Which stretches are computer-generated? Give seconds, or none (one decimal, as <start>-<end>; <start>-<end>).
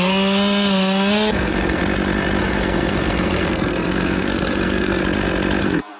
0.0-1.8; 2.4-5.0; 5.6-6.0